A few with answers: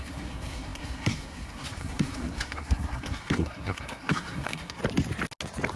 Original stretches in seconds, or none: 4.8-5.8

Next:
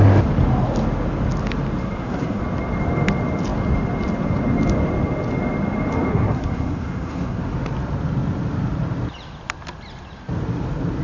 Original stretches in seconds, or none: 0.0-1.8; 2.4-6.1; 7.4-11.0

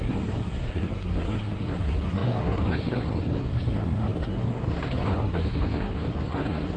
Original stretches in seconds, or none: none

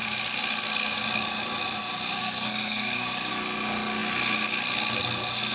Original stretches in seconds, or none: 0.0-2.2; 3.3-5.5

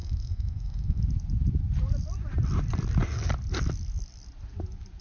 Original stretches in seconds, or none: 1.0-5.0

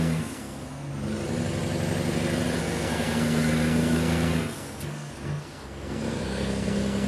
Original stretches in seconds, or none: 0.9-2.6

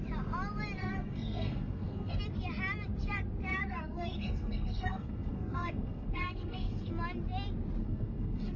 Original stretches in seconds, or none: 0.0-0.8; 2.2-3.5; 6.9-7.8

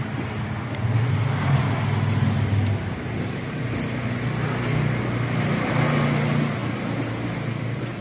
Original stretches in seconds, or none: 0.0-8.0